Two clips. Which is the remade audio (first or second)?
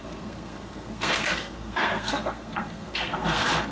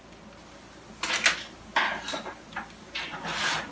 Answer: first